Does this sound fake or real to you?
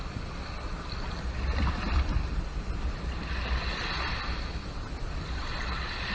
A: real